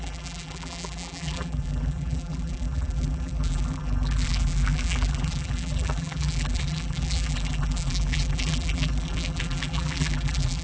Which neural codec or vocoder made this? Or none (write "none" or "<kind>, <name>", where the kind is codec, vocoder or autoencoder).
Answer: vocoder, BigVGAN v2